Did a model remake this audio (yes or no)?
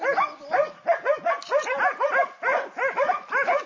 no